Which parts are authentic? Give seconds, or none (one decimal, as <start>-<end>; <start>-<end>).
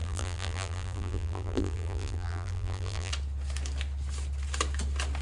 3.1-5.2